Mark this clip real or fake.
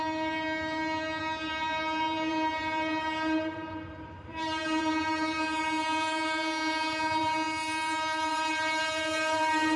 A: fake